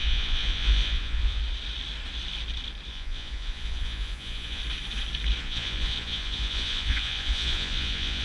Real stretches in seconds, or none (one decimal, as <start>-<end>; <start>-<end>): 1.4-2.9; 4.6-5.4